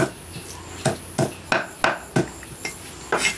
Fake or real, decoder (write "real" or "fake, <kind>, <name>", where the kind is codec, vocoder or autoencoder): real